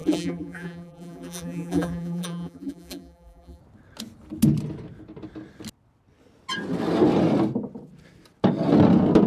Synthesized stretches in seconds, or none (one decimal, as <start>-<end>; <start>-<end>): 0.0-3.6